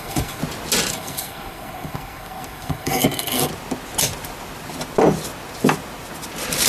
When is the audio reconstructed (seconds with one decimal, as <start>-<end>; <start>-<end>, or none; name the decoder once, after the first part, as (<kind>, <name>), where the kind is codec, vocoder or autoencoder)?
0.0-0.4 (codec, SNAC); 0.9-3.5